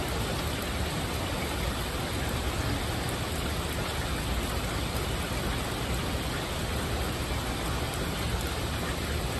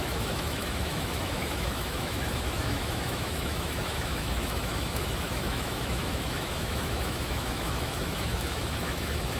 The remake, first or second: second